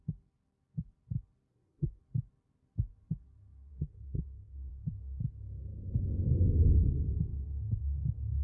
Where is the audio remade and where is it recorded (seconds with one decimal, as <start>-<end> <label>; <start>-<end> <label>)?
0.0-1.5 recorded; 1.5-2.0 remade; 2.0-3.7 recorded; 3.7-4.7 remade; 4.7-8.4 recorded

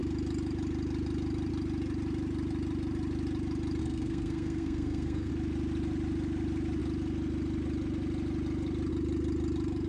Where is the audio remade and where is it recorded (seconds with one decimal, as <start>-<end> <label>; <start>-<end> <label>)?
0.0-3.8 recorded; 3.8-5.3 remade; 5.3-9.9 recorded